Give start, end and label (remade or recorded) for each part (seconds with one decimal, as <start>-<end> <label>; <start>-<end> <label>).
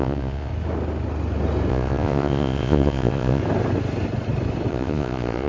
0.0-0.5 remade; 0.5-1.7 recorded; 1.7-3.4 remade; 3.4-4.7 recorded; 4.7-5.5 remade